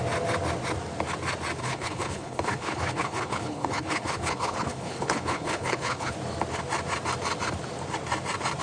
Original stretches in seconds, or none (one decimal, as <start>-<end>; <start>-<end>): 0.0-1.6; 6.1-8.6